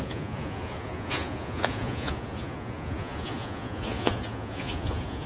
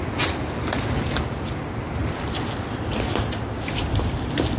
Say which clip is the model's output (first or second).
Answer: first